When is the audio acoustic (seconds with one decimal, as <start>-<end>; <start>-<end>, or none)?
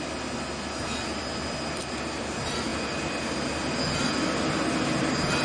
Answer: 0.0-0.9; 2.2-2.7; 3.8-5.4